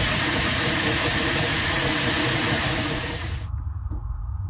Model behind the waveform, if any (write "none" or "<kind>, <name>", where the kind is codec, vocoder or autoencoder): vocoder, Vocos